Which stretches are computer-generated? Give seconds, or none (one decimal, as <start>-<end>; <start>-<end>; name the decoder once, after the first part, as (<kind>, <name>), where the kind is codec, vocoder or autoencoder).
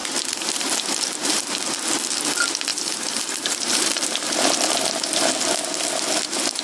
0.0-1.5 (vocoder, BigVGAN v2); 2.7-5.2